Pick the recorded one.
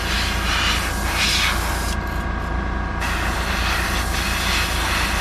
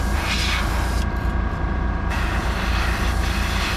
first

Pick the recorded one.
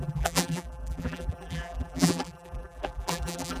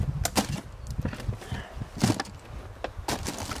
second